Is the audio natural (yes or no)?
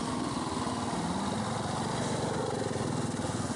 yes